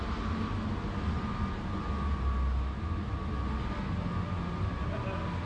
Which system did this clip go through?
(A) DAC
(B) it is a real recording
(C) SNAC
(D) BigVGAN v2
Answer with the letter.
B